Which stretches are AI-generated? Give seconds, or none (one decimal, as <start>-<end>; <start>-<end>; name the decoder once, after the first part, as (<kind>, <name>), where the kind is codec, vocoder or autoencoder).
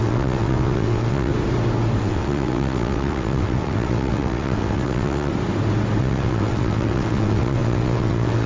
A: 0.0-1.3 (vocoder, WaveNeXt); 2.0-5.3; 6.0-8.5